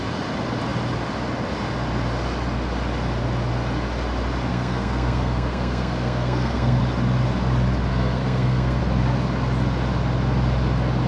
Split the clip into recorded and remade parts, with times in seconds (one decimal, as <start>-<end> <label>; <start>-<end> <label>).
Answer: 0.0-4.5 recorded; 4.5-6.8 remade; 6.8-7.9 recorded; 7.9-8.8 remade; 8.8-11.1 recorded